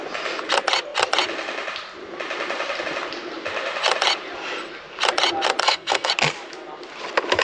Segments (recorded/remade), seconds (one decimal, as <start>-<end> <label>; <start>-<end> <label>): 0.0-5.6 recorded; 5.6-6.1 remade; 6.1-7.4 recorded